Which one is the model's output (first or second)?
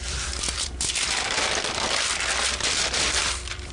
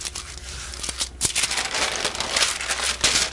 first